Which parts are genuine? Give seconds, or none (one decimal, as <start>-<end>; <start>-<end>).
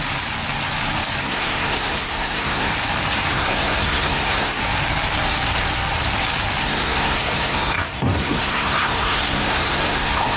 0.0-1.2; 2.7-3.3; 4.6-6.6